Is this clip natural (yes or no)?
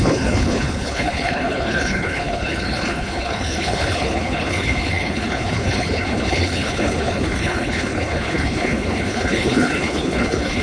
no